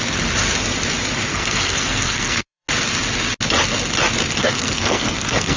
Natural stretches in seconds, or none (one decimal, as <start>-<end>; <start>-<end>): 0.0-1.3; 2.7-4.4